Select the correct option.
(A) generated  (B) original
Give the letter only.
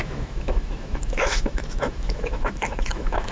A